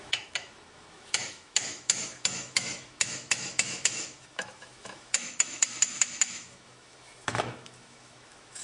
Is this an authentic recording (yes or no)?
no